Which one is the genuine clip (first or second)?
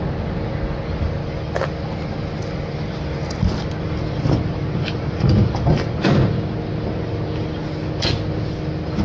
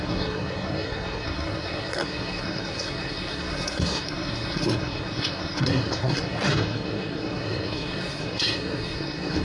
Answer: first